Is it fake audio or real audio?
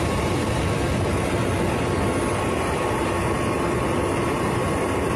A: real